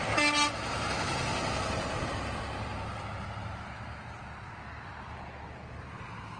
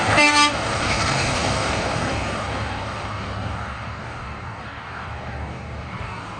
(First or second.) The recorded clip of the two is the first